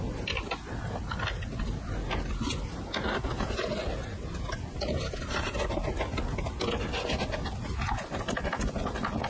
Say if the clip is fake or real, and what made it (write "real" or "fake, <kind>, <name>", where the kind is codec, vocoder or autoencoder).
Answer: real